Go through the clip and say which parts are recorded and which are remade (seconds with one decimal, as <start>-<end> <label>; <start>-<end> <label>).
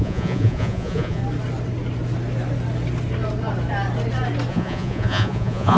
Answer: 0.0-1.2 remade; 1.2-4.5 recorded; 4.5-5.8 remade